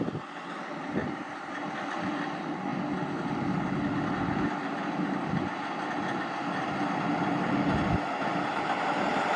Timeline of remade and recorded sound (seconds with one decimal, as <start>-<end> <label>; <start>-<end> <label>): 0.0-1.0 recorded; 1.0-1.5 remade; 1.5-9.4 recorded